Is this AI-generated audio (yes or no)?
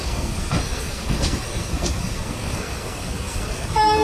yes